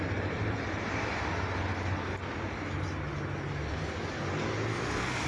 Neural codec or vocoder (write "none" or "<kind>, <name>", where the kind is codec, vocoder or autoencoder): none